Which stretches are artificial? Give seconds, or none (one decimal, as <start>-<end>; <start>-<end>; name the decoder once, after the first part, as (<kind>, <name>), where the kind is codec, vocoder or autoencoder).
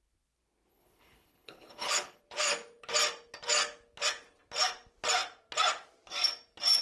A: 0.7-2.2 (codec, HILCodec)